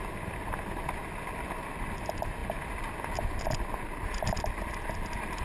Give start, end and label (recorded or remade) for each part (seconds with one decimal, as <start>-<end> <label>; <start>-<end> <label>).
0.0-5.4 recorded